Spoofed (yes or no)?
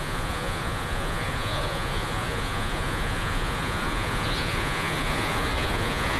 yes